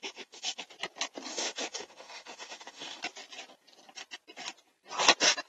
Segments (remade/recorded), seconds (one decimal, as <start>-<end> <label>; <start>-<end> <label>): 0.0-0.6 remade; 0.6-1.3 recorded; 1.3-3.0 remade; 3.0-5.5 recorded